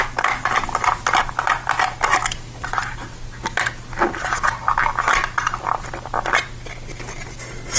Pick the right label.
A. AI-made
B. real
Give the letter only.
B